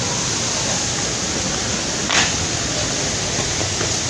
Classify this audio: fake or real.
real